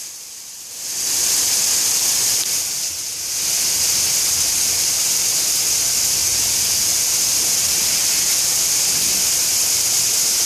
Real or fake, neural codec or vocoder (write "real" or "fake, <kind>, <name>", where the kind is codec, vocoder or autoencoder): real